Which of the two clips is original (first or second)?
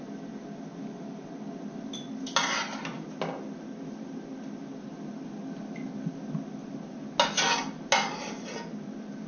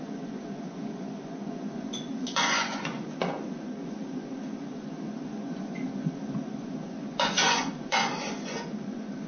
first